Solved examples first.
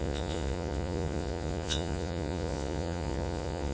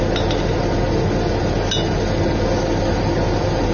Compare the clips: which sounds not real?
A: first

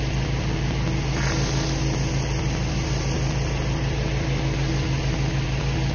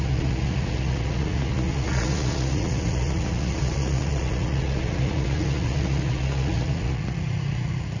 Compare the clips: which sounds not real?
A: second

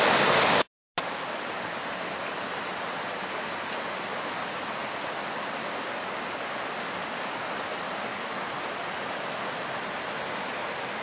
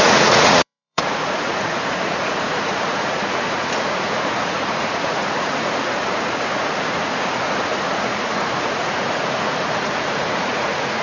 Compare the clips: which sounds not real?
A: second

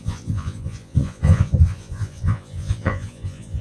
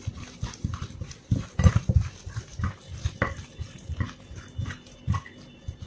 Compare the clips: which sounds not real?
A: first